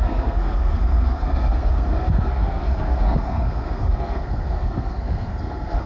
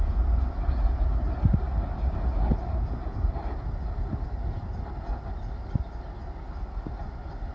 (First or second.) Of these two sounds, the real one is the second